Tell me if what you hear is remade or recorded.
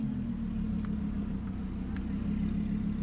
recorded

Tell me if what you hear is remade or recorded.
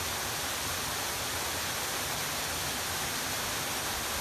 recorded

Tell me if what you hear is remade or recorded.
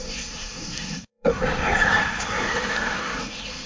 remade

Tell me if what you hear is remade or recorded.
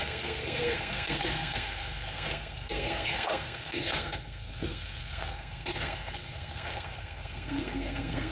remade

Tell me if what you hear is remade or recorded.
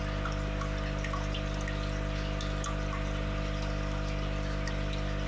recorded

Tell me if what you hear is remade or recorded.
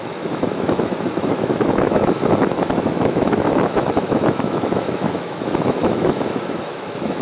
remade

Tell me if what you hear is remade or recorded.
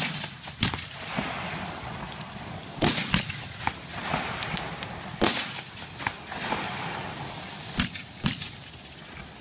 recorded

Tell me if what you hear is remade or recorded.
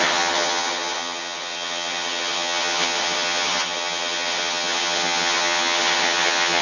remade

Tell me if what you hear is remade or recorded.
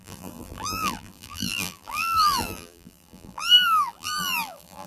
remade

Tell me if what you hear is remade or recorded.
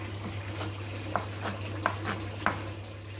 recorded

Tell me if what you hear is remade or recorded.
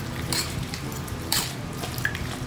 remade